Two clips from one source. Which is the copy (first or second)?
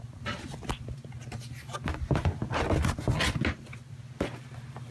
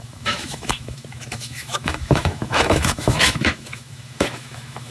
second